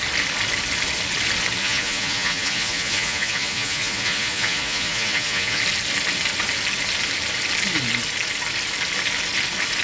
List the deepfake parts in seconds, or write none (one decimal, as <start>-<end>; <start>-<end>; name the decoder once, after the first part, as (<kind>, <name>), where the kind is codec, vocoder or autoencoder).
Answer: 1.6-5.6 (vocoder, Vocos)